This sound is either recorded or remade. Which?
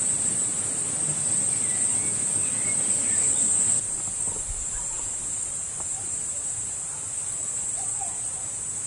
recorded